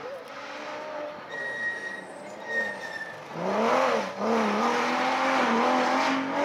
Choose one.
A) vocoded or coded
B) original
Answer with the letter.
B